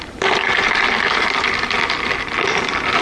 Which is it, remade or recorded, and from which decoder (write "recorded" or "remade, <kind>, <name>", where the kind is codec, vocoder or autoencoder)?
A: recorded